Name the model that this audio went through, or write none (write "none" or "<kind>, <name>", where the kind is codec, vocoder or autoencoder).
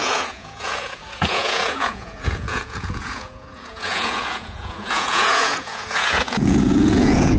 vocoder, Vocos